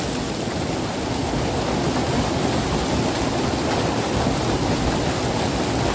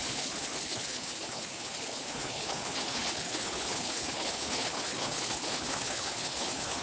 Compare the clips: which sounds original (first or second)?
first